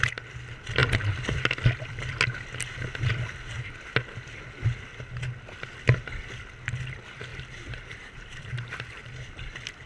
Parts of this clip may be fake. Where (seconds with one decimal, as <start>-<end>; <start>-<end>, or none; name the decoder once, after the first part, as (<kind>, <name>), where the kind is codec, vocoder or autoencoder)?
7.3-9.1 (vocoder, BigVGAN v2)